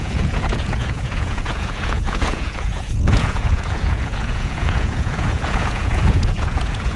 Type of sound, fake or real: fake